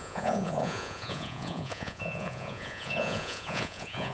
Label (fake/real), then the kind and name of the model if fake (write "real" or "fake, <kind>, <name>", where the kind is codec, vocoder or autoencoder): fake, vocoder, Vocos